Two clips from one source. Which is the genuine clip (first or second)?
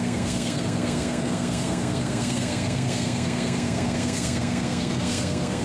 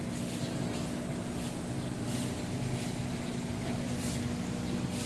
second